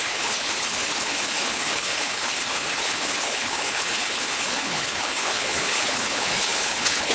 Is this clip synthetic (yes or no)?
yes